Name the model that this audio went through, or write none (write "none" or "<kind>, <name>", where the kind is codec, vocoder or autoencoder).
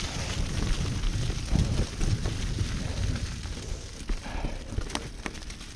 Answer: none